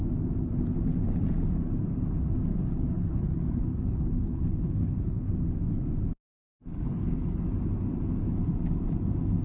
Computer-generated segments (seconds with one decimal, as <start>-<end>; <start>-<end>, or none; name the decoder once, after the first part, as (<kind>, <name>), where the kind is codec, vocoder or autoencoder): 2.5-5.3 (codec, HILCodec); 6.7-7.3